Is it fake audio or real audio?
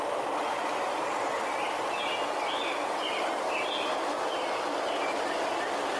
real